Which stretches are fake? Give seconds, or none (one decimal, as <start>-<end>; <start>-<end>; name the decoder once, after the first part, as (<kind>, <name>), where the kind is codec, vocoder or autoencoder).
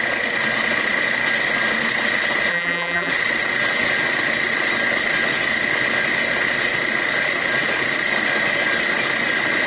2.5-3.1 (vocoder, BigVGAN v2)